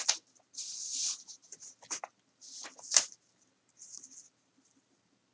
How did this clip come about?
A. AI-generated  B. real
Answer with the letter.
A